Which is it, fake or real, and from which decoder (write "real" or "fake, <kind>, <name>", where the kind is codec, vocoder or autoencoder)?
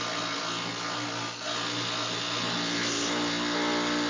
real